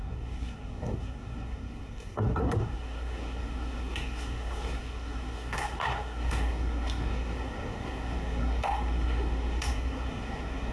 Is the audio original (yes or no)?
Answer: no